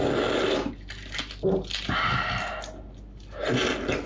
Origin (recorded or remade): recorded